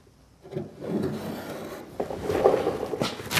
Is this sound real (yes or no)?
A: yes